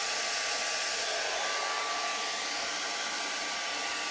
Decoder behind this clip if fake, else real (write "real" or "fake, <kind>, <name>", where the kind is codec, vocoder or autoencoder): real